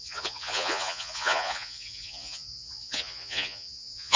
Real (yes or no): no